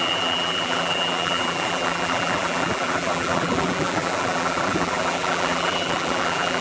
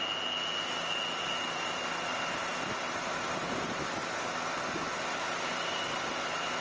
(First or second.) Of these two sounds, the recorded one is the second